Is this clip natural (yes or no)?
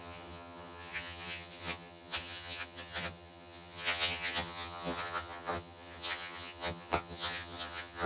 no